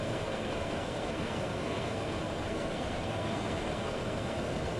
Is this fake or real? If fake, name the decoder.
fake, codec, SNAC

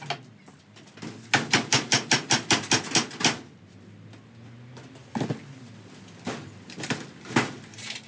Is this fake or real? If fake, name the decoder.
real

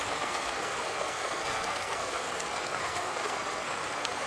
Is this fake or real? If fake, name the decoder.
fake, codec, SNAC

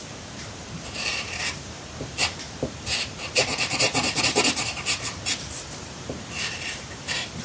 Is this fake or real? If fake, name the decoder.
fake, vocoder, BigVGAN v2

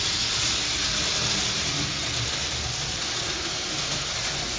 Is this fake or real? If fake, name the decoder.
real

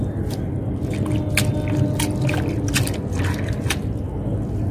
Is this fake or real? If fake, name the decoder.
real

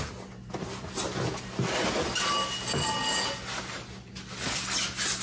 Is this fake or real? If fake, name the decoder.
real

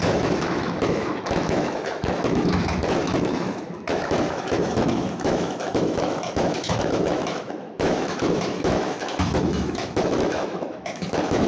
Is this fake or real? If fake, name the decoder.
fake, autoencoder, DAC-VAE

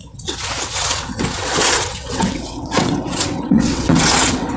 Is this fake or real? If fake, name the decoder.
fake, vocoder, WaveNeXt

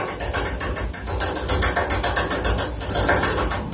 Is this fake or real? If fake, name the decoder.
real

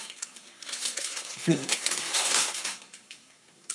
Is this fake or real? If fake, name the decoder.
fake, codec, SNAC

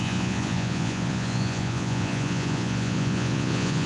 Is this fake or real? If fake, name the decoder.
fake, vocoder, Vocos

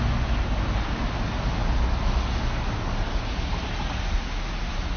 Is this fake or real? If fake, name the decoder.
real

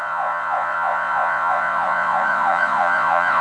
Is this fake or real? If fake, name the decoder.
fake, vocoder, Vocos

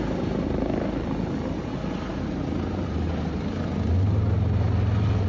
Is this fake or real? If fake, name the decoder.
real